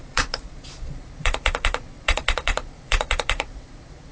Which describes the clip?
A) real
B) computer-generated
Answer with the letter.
B